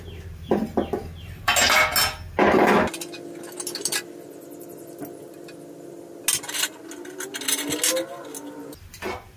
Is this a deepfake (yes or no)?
no